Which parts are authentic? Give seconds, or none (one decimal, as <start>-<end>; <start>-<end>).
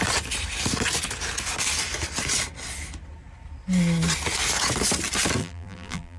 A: 0.0-5.4